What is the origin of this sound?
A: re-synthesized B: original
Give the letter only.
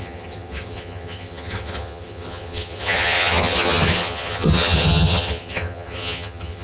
A